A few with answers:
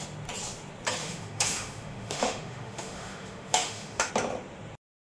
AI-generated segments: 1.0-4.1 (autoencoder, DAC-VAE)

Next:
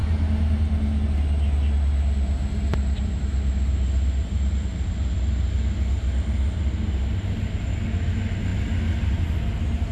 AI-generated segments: none